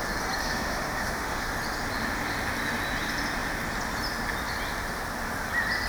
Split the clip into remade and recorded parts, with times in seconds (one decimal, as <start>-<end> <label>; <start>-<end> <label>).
0.0-0.4 recorded; 0.4-1.5 remade; 1.5-5.9 recorded